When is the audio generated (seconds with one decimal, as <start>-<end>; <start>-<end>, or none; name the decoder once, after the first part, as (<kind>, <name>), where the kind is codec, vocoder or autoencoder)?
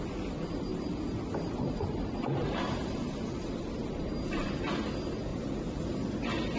0.7-4.7 (vocoder, BigVGAN v2); 5.3-6.1